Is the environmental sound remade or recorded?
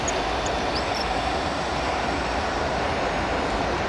recorded